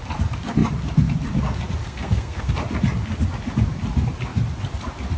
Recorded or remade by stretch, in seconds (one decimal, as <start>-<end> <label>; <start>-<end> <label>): 0.0-1.8 recorded; 1.8-2.5 remade; 2.5-5.2 recorded

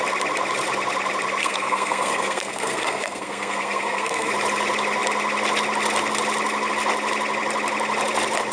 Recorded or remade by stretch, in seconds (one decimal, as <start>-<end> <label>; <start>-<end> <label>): 0.0-1.4 recorded; 1.4-4.3 remade; 4.3-8.5 recorded